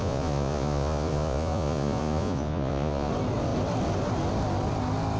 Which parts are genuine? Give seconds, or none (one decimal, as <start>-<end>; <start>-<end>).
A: 3.1-5.2